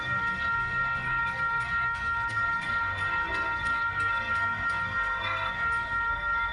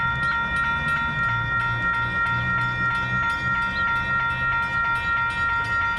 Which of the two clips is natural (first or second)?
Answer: second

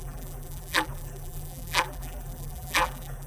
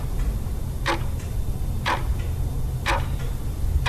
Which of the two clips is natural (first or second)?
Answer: second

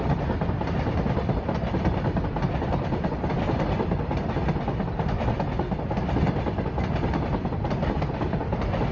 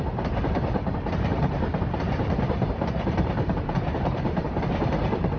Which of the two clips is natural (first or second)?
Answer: first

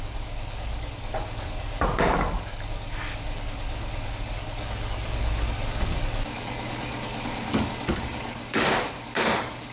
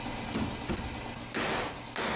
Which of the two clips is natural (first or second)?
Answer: second